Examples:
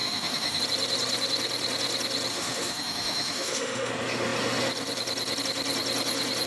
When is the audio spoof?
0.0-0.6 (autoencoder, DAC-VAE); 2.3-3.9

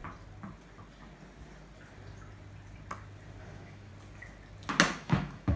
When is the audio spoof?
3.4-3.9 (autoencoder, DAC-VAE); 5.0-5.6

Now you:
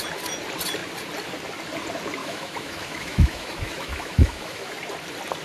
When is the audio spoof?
2.2-4.7 (autoencoder, DAC-VAE)

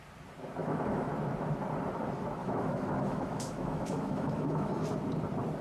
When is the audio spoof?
0.6-1.1 (autoencoder, DAC-VAE); 2.4-4.7

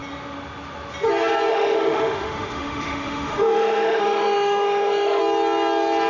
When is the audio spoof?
1.5-5.2 (autoencoder, DAC-VAE)

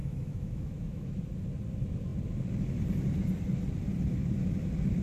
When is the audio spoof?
0.0-1.2 (autoencoder, DAC-VAE)

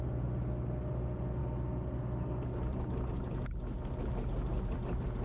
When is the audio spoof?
none

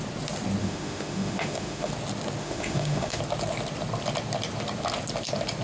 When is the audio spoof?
0.6-1.9 (autoencoder, DAC-VAE); 2.4-3.2